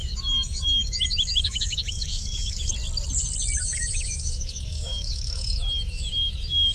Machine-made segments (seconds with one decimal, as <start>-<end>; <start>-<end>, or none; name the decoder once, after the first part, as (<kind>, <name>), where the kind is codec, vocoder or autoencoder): 0.0-2.7 (autoencoder, DAC-VAE); 3.6-6.7